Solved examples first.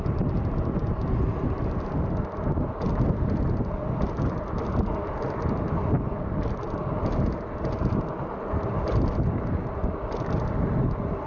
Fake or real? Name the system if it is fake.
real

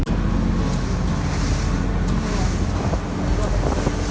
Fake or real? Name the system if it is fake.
real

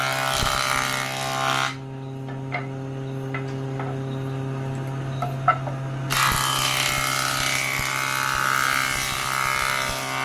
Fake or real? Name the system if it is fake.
real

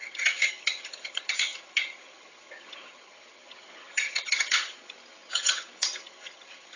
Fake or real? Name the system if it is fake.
fake, vocoder, HiFi-GAN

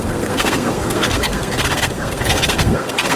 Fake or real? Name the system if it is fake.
fake, codec, SNAC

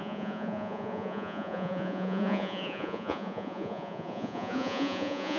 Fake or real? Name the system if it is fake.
fake, vocoder, Vocos